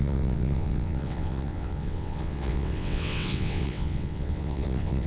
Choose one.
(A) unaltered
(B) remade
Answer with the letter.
B